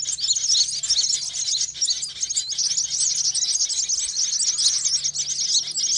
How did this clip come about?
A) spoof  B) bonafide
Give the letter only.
B